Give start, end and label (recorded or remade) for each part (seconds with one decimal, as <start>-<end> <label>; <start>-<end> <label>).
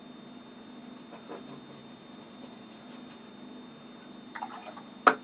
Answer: 0.0-0.8 recorded; 0.8-1.4 remade; 1.4-1.8 recorded; 1.8-3.3 remade; 3.3-5.2 recorded